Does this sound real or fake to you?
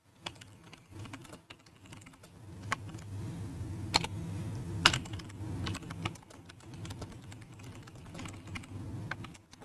real